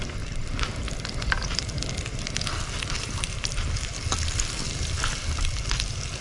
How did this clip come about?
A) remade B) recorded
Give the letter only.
B